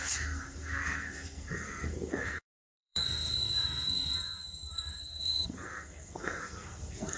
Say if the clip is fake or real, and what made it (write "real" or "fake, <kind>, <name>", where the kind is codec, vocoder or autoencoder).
fake, codec, SNAC